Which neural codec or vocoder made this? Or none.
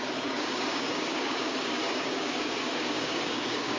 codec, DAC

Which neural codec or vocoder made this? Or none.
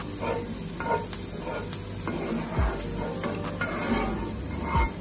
none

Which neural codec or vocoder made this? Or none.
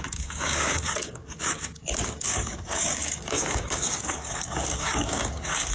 codec, DAC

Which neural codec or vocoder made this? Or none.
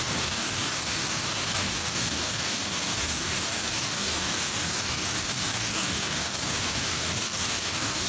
codec, DAC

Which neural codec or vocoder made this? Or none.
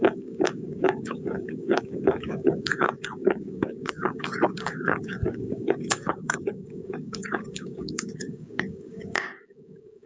codec, DAC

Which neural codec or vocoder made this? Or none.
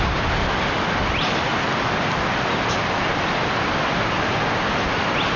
none